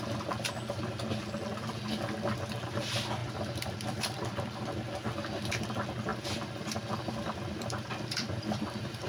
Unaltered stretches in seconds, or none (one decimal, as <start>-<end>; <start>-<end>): 0.0-3.2; 4.6-6.1